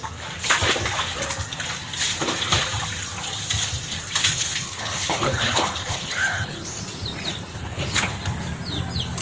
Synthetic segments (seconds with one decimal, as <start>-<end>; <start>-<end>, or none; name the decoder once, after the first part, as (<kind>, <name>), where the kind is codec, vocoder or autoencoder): 4.2-6.8 (codec, HILCodec); 7.5-8.2